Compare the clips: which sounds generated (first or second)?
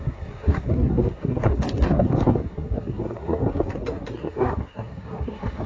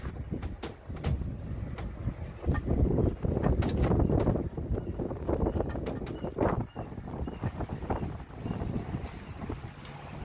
first